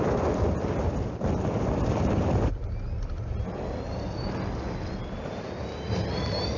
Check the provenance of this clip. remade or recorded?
recorded